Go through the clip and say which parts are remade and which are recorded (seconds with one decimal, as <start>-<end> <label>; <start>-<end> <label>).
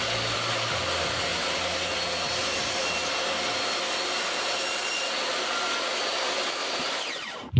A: 0.0-6.6 recorded; 6.6-7.6 remade